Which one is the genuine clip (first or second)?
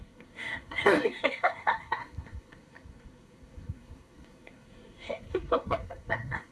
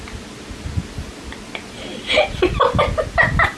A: second